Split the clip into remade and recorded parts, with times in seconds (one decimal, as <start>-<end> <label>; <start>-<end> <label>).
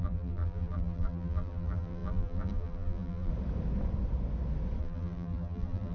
0.0-3.3 remade; 3.3-4.8 recorded; 4.8-5.9 remade